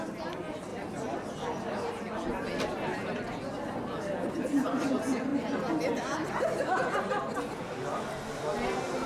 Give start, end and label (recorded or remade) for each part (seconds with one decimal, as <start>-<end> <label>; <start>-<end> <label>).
0.0-9.1 recorded